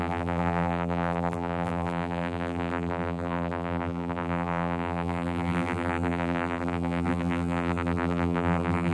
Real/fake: fake